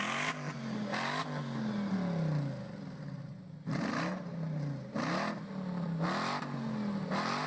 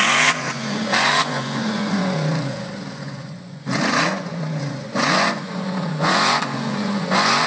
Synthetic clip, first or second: second